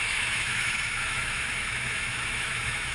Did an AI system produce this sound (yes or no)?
yes